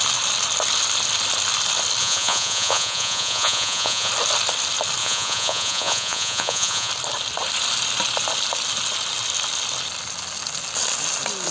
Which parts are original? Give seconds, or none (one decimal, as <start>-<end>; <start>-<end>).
0.0-2.0; 4.1-5.0; 6.9-11.5